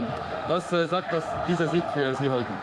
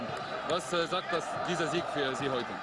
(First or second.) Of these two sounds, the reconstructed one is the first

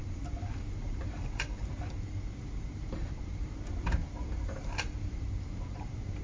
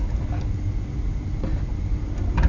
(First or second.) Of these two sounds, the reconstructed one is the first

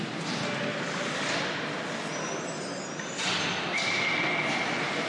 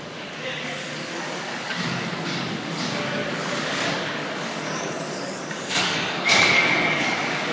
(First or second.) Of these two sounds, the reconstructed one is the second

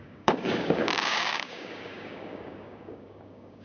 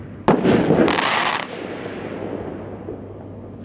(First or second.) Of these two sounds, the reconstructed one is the first